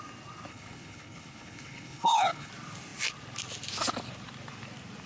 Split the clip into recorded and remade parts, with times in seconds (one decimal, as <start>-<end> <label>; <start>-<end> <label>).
0.0-0.5 recorded; 0.5-2.5 remade; 2.5-5.1 recorded